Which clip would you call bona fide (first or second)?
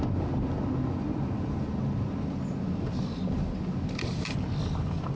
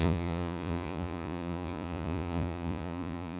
first